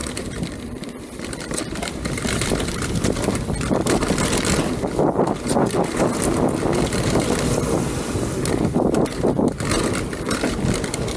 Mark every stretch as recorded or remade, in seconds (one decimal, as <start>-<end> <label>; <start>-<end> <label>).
0.0-2.7 remade; 2.7-11.2 recorded